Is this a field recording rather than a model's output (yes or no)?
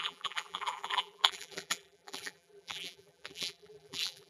no